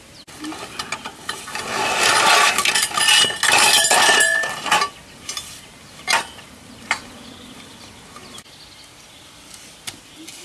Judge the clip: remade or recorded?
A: recorded